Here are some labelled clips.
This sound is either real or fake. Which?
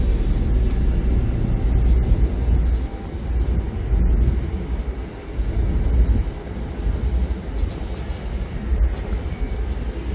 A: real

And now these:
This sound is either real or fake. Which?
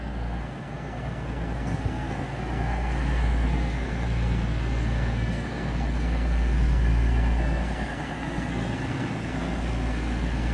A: fake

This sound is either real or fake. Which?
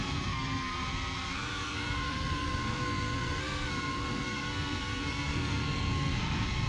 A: fake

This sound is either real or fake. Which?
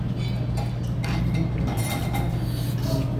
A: real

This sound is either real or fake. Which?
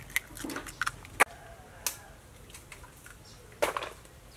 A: real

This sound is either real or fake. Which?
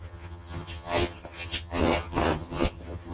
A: fake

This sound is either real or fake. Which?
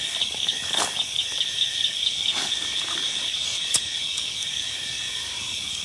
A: fake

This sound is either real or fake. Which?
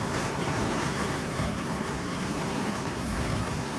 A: fake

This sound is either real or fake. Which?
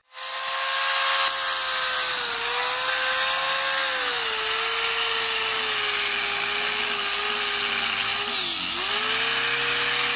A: real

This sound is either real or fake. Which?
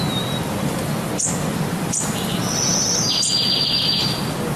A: real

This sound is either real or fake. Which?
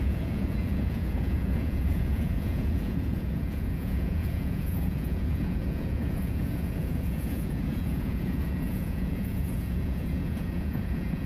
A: fake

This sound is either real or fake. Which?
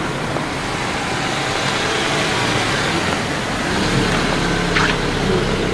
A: real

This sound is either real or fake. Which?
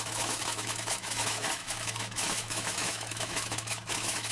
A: fake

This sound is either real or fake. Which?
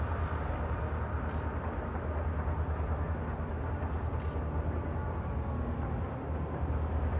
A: real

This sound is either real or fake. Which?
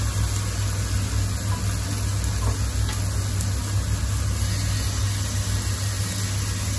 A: real